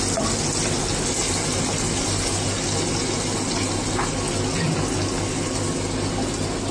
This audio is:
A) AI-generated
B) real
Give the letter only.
B